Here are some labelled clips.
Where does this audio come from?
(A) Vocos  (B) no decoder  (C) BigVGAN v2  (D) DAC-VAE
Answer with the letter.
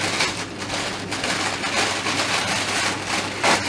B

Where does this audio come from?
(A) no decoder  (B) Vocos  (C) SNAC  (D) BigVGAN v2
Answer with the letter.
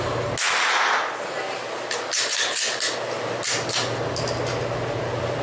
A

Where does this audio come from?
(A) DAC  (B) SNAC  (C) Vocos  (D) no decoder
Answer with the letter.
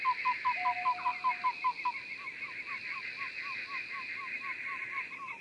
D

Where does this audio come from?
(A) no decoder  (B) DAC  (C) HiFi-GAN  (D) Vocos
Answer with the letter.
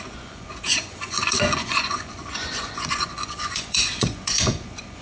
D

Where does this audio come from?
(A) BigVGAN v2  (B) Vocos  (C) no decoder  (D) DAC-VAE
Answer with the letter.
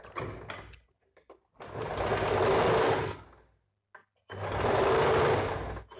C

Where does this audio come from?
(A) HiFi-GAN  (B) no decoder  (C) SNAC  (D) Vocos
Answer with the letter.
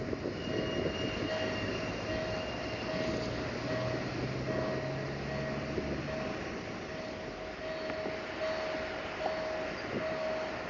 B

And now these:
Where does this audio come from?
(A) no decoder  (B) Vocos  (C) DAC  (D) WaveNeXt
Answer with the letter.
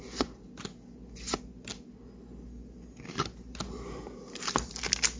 A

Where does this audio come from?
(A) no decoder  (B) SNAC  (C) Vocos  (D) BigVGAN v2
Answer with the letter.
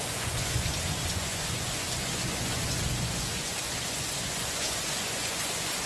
C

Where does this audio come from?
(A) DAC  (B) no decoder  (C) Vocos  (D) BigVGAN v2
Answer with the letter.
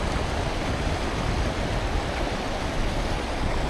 B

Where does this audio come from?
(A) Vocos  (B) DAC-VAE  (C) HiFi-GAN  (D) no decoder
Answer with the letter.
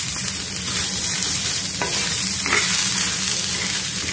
D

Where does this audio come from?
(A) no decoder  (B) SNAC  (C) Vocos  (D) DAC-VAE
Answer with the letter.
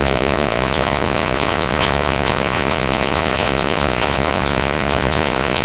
C